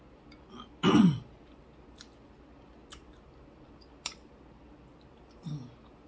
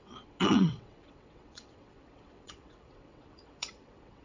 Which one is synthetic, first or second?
second